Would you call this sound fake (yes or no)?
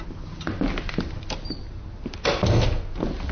no